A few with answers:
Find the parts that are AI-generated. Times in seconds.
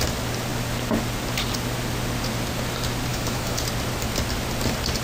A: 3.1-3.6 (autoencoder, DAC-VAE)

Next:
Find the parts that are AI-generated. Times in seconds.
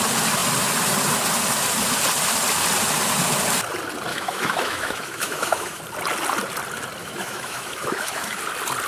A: 4.1-5.8 (autoencoder, DAC-VAE); 7.0-8.4